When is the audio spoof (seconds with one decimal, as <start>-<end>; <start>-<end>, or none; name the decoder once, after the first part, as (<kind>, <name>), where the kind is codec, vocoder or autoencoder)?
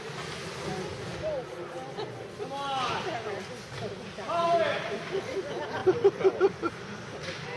5.8-6.4 (vocoder, BigVGAN v2)